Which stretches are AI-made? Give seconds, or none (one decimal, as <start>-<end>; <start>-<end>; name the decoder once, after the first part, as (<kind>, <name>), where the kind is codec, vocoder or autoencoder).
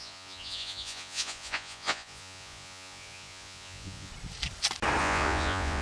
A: 0.0-4.1 (vocoder, Vocos); 5.0-5.8